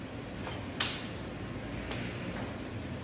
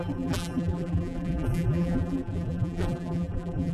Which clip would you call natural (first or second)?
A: first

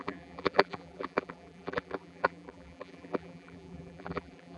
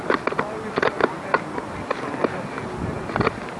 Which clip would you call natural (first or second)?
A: second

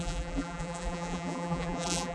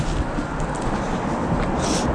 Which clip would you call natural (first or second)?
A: second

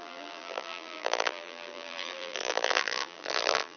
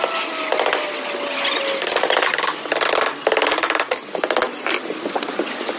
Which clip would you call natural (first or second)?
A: second